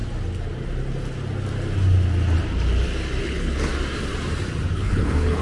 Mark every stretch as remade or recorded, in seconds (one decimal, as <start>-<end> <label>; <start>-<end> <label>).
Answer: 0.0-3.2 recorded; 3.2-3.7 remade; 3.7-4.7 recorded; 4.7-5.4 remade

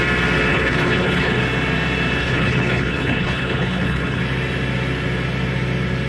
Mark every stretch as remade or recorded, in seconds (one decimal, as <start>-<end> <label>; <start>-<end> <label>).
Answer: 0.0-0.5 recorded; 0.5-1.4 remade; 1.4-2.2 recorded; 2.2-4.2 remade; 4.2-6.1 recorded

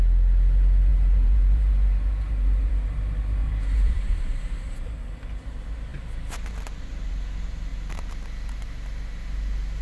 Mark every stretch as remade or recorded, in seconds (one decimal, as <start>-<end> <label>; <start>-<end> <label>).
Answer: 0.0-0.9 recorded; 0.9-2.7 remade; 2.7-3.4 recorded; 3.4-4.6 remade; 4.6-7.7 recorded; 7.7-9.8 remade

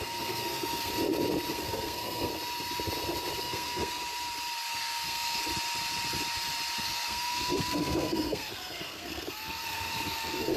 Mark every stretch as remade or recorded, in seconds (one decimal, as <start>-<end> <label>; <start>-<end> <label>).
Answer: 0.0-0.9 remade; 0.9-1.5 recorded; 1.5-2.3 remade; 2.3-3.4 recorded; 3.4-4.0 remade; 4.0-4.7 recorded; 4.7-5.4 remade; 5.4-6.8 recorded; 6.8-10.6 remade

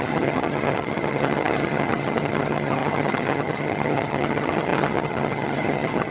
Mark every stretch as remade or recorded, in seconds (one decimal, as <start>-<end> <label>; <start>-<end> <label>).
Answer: 0.0-6.1 remade

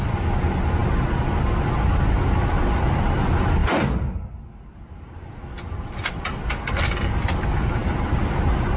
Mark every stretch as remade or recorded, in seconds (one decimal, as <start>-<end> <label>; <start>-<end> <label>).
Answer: 0.0-8.8 recorded

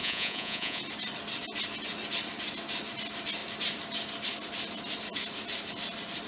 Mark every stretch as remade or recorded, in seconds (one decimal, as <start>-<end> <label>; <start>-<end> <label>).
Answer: 0.0-0.8 remade; 0.8-6.3 recorded

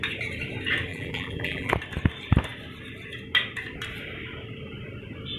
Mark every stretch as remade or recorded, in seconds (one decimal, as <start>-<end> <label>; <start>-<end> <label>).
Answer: 0.0-0.9 recorded; 0.9-1.7 remade; 1.7-5.4 recorded